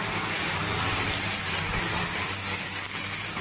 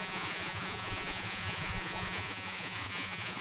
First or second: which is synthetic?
second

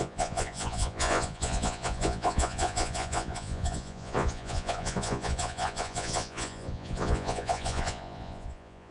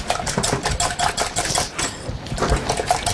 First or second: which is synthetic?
first